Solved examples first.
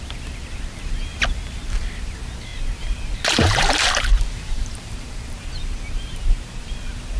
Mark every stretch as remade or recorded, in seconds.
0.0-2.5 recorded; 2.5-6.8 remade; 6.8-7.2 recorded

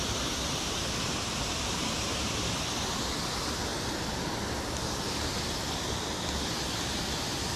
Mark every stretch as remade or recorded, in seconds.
0.0-7.6 recorded

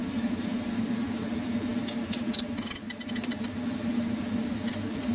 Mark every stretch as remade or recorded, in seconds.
0.0-5.1 recorded